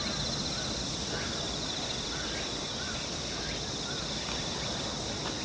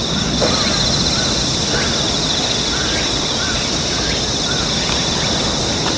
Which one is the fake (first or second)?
second